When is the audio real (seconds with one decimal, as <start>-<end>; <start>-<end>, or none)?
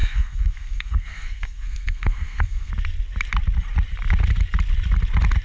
2.7-5.4